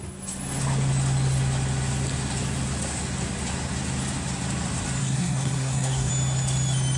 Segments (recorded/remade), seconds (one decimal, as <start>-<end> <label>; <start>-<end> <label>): 0.0-5.0 recorded; 5.0-6.1 remade; 6.1-7.0 recorded